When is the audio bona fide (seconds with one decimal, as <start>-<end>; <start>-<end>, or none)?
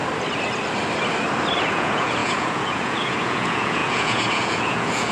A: 0.0-1.6